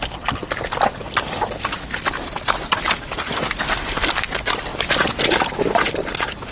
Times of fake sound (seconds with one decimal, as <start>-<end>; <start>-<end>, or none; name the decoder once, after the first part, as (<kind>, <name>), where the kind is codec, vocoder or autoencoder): none

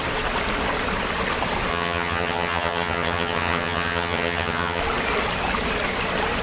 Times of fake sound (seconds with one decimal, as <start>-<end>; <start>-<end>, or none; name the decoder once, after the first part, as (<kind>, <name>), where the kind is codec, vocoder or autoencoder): 1.7-4.8 (vocoder, HiFi-GAN)

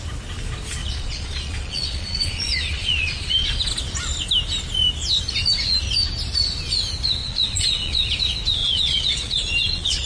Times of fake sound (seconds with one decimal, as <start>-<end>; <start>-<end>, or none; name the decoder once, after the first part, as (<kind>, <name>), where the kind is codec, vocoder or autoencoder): 0.8-3.7 (vocoder, Vocos); 7.2-8.2; 8.6-10.1

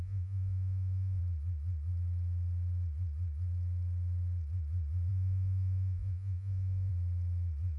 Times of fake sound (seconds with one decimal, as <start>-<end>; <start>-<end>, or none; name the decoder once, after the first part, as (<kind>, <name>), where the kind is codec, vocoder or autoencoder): 0.0-1.2 (vocoder, Vocos); 5.1-6.9

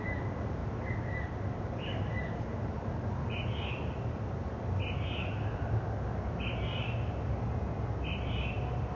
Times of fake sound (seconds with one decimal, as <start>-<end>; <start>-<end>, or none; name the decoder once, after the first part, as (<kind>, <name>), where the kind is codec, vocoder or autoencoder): none

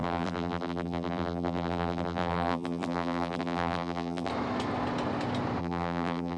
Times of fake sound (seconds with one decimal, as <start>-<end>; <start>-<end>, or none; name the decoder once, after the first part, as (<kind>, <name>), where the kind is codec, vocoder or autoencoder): 0.0-4.3 (vocoder, BigVGAN v2); 5.6-6.4

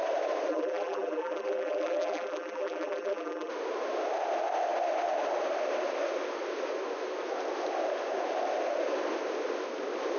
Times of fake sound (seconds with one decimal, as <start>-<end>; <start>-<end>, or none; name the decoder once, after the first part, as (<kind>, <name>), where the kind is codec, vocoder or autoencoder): 0.5-3.5 (vocoder, BigVGAN v2)

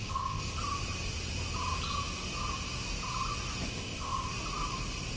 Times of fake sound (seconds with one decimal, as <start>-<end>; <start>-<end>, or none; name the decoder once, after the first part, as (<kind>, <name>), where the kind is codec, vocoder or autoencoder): 0.0-0.6 (codec, ZipCodec); 3.7-4.3